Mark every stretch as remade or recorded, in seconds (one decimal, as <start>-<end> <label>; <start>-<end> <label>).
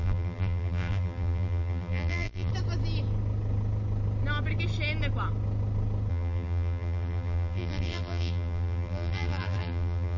0.0-2.5 remade; 2.5-6.1 recorded; 6.1-10.2 remade